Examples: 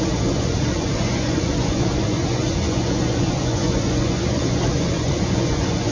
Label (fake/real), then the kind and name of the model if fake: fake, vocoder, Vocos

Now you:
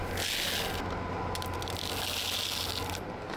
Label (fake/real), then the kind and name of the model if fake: real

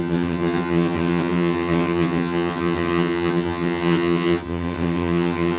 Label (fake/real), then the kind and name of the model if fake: fake, vocoder, HiFi-GAN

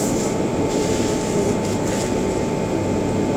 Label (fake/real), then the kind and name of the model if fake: real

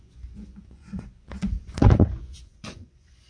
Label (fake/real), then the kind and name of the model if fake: fake, vocoder, Vocos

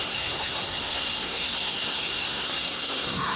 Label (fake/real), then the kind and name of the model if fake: fake, codec, SNAC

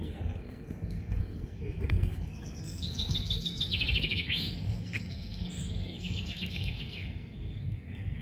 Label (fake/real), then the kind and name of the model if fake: fake, codec, SNAC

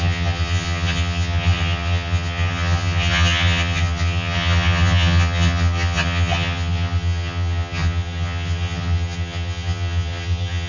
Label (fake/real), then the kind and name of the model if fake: fake, vocoder, HiFi-GAN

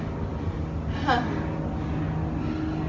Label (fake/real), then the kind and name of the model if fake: real